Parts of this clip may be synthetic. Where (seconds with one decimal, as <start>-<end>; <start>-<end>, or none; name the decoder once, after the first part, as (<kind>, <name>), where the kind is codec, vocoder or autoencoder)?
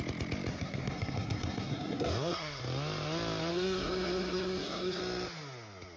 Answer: 0.5-2.6 (codec, SNAC); 3.5-5.0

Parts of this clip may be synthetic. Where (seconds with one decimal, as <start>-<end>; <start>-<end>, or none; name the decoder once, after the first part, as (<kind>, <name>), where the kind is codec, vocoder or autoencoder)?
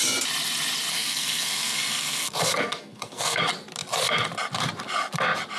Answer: 0.9-3.4 (codec, SNAC)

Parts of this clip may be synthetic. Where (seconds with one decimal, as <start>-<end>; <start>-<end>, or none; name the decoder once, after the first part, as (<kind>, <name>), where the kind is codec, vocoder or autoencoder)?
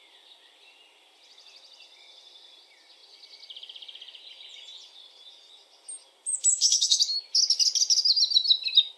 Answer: 6.5-7.0 (codec, SNAC)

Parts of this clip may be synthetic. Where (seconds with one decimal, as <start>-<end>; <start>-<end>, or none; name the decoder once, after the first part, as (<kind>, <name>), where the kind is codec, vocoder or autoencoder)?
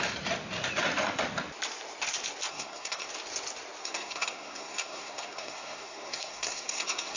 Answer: 2.5-3.1 (codec, SNAC); 3.8-7.2